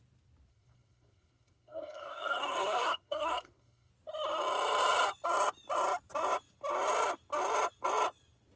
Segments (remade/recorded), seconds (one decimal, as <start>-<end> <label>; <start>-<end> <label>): 0.0-0.5 recorded; 0.5-3.9 remade; 3.9-8.6 recorded